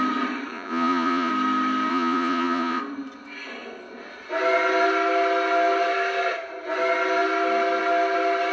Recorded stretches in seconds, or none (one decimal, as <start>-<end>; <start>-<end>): 0.0-0.5; 1.3-1.9; 2.8-8.5